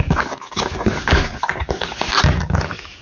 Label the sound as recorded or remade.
remade